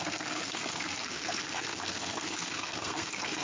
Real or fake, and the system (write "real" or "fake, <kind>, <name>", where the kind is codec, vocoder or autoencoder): fake, codec, SNAC